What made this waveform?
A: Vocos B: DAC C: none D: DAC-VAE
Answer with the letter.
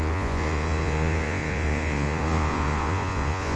A